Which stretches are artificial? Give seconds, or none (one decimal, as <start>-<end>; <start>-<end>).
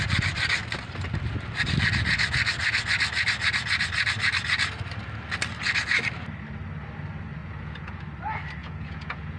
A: 7.4-8.0; 8.6-9.4